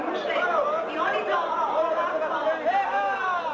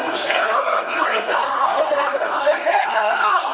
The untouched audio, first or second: first